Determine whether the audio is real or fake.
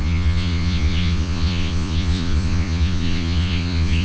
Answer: fake